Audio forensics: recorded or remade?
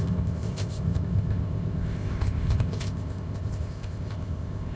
remade